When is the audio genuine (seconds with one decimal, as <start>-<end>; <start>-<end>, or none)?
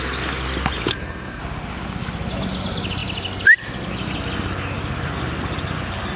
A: 0.0-0.9; 1.4-6.2